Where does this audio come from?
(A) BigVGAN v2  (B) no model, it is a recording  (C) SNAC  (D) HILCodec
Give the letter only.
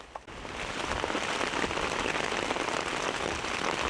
B